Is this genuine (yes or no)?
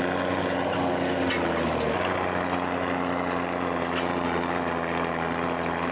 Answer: yes